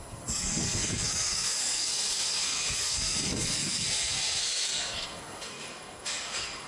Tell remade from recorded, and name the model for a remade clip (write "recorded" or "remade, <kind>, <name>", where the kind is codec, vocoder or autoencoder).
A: remade, codec, SNAC